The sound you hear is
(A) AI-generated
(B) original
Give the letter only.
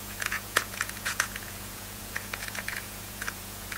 A